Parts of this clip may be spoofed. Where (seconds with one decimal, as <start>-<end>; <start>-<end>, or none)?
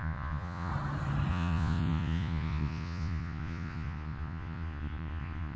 0.0-0.7; 1.3-5.6